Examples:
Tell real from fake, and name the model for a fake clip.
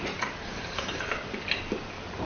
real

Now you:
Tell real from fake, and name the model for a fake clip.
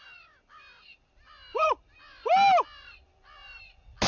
real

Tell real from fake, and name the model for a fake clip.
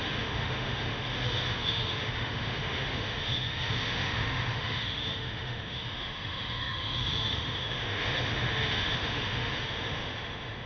fake, autoencoder, DAC-VAE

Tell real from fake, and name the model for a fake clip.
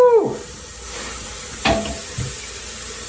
real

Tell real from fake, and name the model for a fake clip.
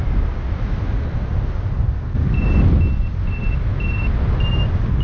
real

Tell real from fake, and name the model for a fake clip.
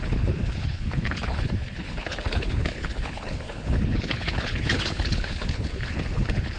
fake, codec, HILCodec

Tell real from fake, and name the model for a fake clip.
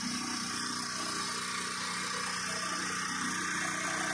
real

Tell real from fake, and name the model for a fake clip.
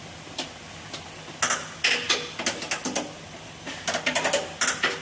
real